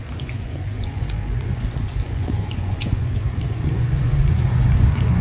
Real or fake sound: fake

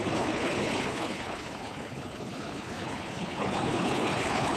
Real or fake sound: fake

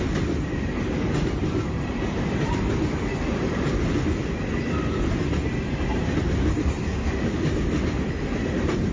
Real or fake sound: real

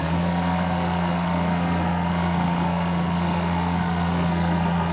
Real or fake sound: fake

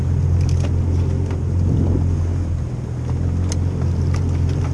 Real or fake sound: real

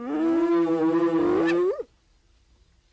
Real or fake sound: real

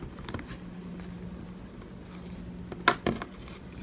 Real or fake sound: real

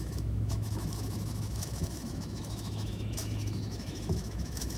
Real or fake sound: fake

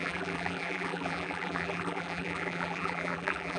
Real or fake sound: fake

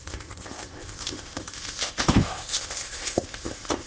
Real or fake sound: fake